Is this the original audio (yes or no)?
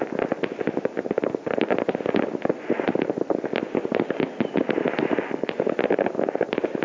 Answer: yes